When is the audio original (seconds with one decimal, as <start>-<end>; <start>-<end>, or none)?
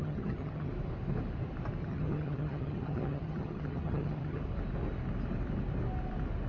0.7-1.8; 4.4-6.5